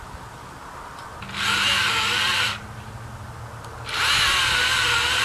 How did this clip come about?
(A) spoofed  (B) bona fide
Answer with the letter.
B